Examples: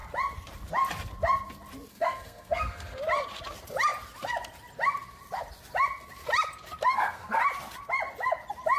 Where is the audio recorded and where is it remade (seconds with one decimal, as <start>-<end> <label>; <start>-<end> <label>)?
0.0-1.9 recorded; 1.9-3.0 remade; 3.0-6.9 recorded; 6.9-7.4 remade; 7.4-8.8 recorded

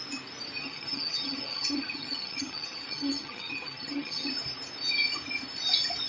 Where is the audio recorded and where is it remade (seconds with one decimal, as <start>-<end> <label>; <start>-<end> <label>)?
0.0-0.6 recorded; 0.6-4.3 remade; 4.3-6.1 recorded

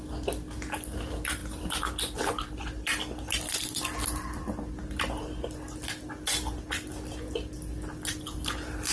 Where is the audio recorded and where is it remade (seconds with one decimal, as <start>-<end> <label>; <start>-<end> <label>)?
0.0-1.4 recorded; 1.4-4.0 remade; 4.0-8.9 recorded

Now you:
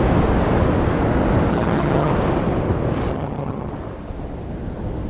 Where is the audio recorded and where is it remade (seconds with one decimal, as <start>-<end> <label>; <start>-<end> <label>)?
0.0-1.5 recorded; 1.5-2.1 remade; 2.1-3.1 recorded; 3.1-3.7 remade; 3.7-5.1 recorded